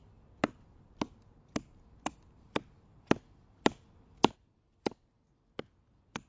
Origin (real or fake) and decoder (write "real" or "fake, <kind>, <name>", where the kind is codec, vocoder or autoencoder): real